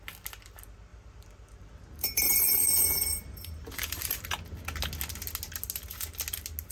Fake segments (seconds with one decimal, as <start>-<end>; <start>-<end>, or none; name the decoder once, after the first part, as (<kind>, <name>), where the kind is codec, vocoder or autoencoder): 0.9-4.2 (vocoder, BigVGAN v2)